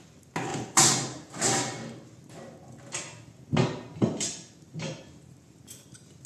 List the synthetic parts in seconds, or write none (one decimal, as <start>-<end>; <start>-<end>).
0.5-1.4